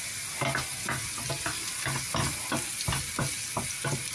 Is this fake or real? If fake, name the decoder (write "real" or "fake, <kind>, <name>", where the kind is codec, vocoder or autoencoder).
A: real